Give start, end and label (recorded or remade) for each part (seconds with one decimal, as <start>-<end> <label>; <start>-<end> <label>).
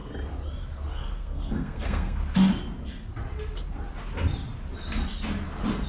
0.0-0.9 recorded; 0.9-2.2 remade; 2.2-5.9 recorded